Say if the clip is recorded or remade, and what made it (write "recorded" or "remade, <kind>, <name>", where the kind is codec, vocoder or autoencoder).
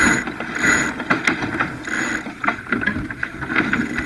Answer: recorded